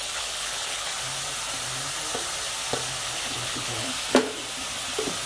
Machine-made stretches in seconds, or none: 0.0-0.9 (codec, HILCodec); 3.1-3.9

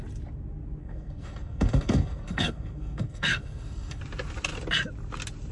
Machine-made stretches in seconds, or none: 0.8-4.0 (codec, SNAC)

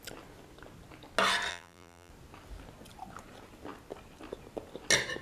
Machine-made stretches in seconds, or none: 1.5-2.1 (vocoder, BigVGAN v2)

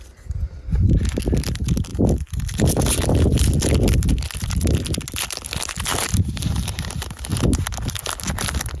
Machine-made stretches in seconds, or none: none

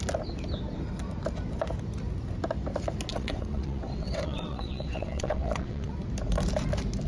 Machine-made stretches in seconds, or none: 3.1-5.9 (vocoder, WaveNeXt)